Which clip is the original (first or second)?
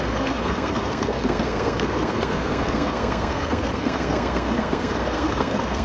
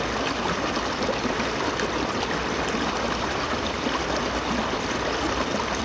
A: second